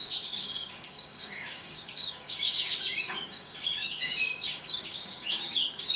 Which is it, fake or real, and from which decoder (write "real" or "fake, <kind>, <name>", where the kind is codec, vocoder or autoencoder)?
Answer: fake, codec, DAC